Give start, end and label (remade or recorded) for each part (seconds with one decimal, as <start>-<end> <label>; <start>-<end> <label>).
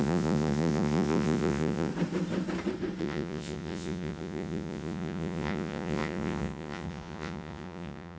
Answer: 0.0-1.9 remade; 1.9-3.0 recorded; 3.0-8.2 remade